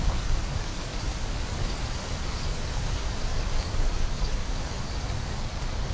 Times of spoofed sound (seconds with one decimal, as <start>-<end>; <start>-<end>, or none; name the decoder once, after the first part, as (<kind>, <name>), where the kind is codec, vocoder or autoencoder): 0.0-5.9 (codec, DAC)